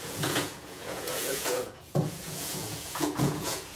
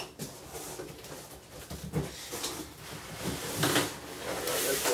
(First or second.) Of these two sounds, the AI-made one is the first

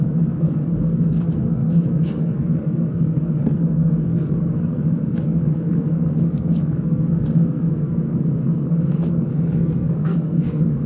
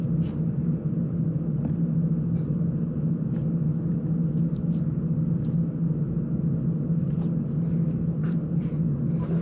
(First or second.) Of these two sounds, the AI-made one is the first